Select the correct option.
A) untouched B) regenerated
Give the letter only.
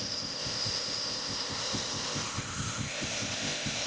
B